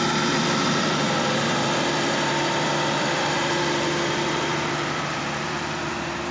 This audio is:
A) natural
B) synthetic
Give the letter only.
B